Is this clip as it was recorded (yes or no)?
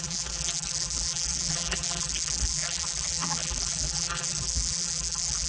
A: no